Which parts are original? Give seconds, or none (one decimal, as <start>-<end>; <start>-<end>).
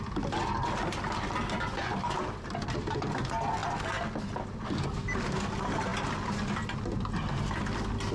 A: 0.0-8.1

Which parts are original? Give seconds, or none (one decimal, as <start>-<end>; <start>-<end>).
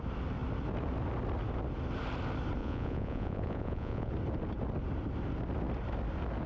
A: 0.0-2.6; 4.1-6.5